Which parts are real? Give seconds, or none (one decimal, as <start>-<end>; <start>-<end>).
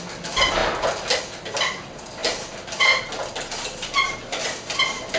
0.0-5.2